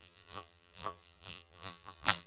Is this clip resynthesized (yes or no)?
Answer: yes